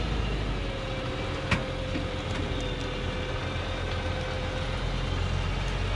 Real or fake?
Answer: real